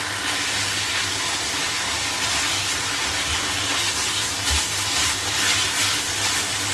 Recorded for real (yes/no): yes